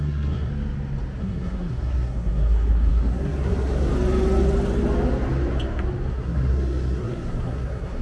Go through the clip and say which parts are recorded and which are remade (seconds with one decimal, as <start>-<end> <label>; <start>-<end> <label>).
0.0-0.5 remade; 0.5-1.2 recorded; 1.2-3.9 remade; 3.9-6.1 recorded; 6.1-8.0 remade